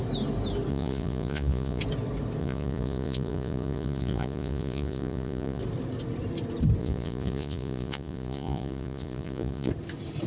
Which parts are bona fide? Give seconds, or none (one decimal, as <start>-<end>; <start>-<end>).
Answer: 0.0-0.7; 1.8-2.4; 5.6-6.8; 9.7-10.3

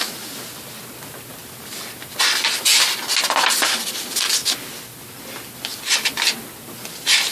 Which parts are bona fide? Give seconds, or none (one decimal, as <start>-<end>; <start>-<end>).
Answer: 0.0-7.3

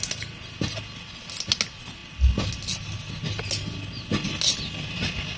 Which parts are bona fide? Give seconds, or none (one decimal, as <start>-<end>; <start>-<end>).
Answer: 0.0-5.4

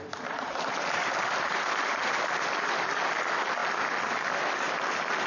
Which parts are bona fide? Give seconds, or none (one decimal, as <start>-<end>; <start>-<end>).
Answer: 0.0-5.3